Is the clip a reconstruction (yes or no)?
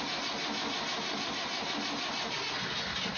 no